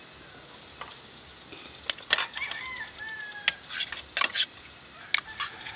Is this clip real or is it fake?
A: real